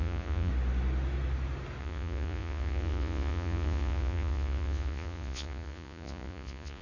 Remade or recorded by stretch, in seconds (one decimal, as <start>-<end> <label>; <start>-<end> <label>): 0.0-0.5 remade; 0.5-1.8 recorded; 1.8-6.8 remade